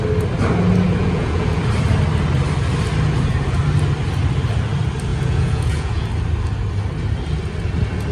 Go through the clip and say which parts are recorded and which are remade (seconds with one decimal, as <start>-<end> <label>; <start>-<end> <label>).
0.0-1.0 recorded; 1.0-1.6 remade; 1.6-5.1 recorded; 5.1-6.1 remade; 6.1-8.1 recorded